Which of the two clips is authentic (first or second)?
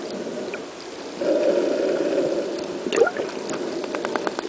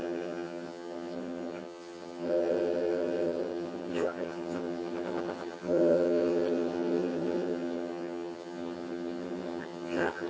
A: first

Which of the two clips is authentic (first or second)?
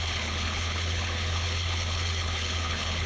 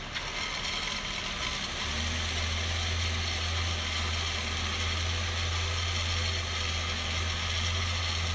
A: second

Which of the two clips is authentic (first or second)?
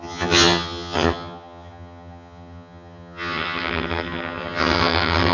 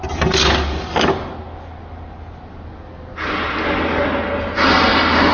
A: second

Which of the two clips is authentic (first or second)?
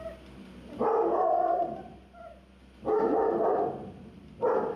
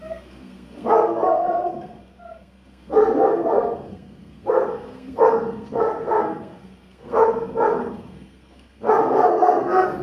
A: first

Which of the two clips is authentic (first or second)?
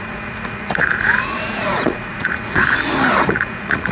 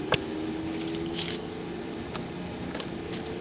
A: second